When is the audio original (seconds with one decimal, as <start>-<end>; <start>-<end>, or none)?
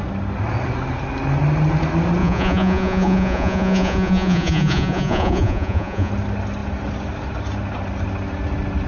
0.0-2.2; 6.1-8.9